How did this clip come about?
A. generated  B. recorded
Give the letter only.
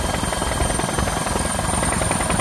B